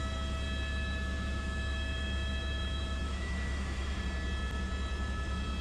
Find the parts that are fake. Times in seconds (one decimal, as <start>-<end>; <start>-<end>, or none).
0.7-4.0